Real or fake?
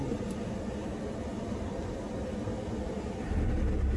real